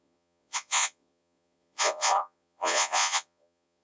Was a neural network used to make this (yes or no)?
yes